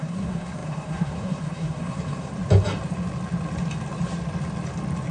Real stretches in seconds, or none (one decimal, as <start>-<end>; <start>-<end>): 2.3-5.1